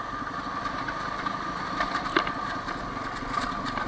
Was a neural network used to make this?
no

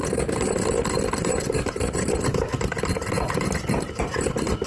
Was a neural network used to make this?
yes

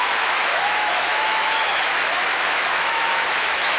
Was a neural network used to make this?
yes